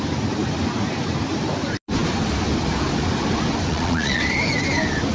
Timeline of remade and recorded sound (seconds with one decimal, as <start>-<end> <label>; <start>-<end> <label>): 0.0-3.7 recorded; 3.7-4.2 remade; 4.2-5.1 recorded